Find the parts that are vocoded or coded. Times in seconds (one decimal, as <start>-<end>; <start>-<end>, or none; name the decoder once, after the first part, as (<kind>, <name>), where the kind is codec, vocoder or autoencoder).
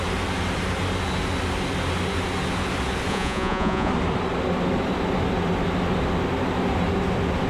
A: 3.1-3.9 (vocoder, Vocos)